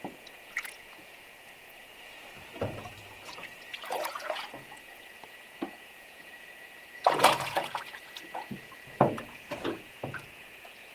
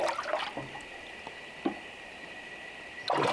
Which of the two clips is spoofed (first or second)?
first